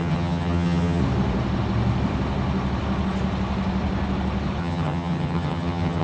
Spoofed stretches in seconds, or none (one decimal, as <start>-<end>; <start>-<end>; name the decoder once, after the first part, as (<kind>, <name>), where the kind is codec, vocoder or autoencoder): 0.0-1.0 (vocoder, HiFi-GAN); 4.6-6.0